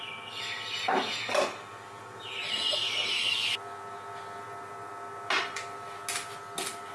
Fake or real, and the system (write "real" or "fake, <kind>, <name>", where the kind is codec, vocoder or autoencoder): real